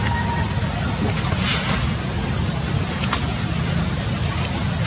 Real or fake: real